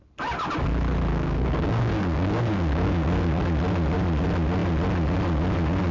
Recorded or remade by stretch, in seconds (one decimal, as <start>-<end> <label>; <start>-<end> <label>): 0.0-1.1 recorded; 1.1-3.4 remade; 3.4-5.9 recorded